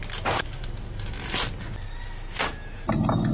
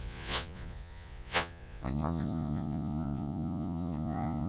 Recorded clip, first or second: first